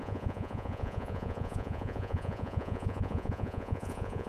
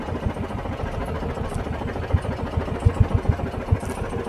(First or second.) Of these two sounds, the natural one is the second